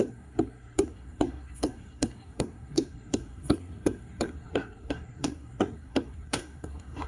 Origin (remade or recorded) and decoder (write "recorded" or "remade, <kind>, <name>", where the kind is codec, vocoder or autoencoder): remade, codec, SNAC